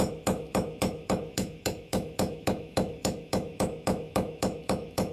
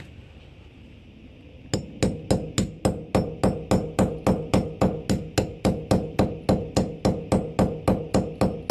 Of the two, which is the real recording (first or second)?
second